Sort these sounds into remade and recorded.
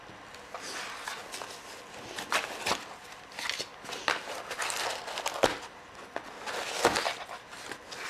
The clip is recorded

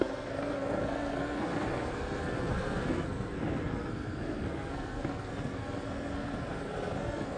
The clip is remade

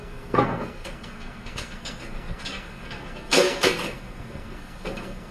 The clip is remade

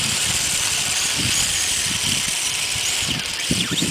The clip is recorded